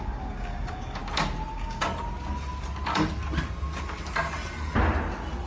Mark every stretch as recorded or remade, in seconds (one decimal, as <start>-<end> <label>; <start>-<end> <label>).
0.0-1.0 remade; 1.0-1.5 recorded; 1.5-1.9 remade; 1.9-5.5 recorded